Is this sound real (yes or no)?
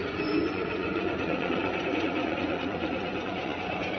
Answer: no